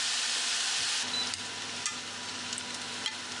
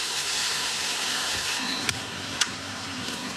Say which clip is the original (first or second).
first